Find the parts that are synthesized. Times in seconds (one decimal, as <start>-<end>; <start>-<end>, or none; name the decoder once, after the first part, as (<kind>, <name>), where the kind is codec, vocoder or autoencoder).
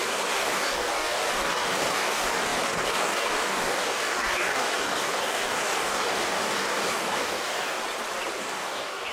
0.0-7.8 (codec, DAC); 8.4-9.1